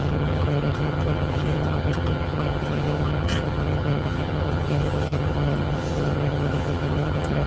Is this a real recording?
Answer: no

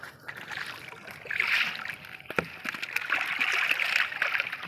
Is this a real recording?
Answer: yes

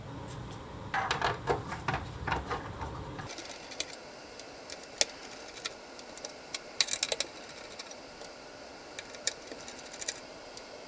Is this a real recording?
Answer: yes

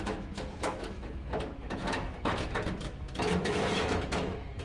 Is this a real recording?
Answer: no